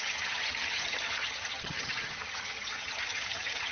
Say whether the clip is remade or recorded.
remade